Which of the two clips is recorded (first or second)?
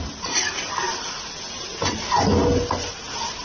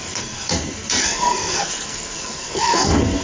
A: first